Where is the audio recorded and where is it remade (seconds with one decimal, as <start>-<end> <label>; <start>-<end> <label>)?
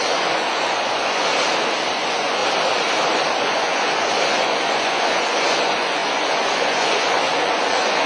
0.0-1.3 remade; 1.3-1.9 recorded; 1.9-2.4 remade; 2.4-3.4 recorded; 3.4-8.1 remade